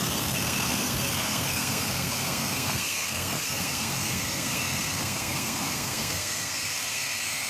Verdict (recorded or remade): remade